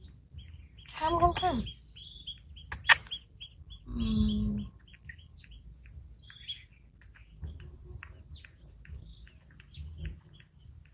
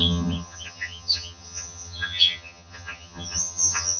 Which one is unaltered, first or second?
first